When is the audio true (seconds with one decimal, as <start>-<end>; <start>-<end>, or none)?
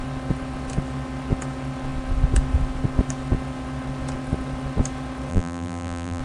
0.0-5.3